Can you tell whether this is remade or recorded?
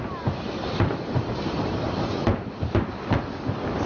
recorded